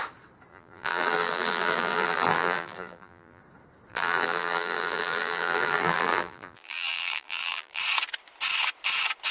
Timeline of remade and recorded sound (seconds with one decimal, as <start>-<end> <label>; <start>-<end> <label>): 0.0-0.5 recorded; 0.5-3.4 remade; 3.4-3.9 recorded; 3.9-7.8 remade; 7.8-9.3 recorded